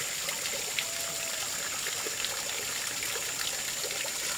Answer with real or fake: real